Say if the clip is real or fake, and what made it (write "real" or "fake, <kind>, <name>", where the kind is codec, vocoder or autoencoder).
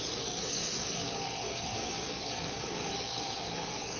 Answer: fake, codec, DAC